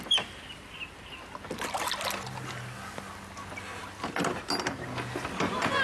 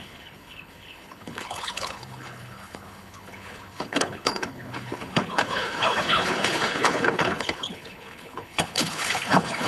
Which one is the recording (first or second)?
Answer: first